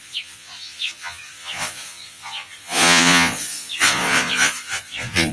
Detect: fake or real fake